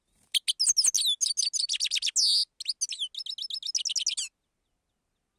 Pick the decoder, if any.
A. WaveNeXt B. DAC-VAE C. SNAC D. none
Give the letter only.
D